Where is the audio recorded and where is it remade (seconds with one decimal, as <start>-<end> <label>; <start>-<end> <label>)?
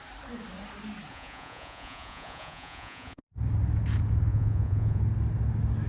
0.0-1.1 recorded; 1.1-3.2 remade; 3.2-4.3 recorded; 4.3-5.0 remade; 5.0-5.9 recorded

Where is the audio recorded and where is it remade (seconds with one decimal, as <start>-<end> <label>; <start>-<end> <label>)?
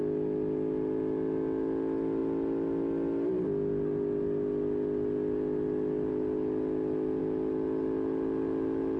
0.0-9.0 recorded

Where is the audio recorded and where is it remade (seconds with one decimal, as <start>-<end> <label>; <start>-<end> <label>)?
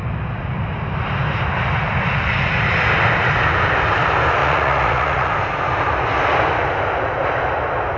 0.0-4.4 recorded; 4.4-5.3 remade; 5.3-8.0 recorded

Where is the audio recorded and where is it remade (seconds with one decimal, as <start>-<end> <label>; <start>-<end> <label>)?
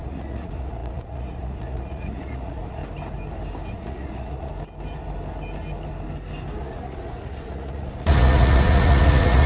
0.0-2.8 remade; 2.8-3.7 recorded; 3.7-4.5 remade; 4.5-6.6 recorded; 6.6-9.5 remade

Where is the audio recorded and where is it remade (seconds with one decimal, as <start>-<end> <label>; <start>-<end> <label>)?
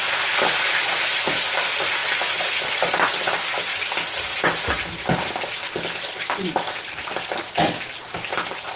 0.0-8.8 recorded